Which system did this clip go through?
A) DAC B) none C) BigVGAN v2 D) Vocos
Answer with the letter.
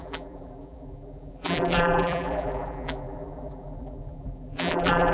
C